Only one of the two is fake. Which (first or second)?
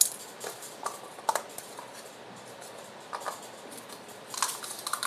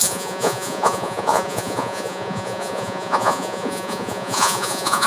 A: second